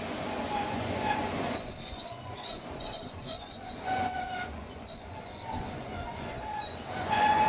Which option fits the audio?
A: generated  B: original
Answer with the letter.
A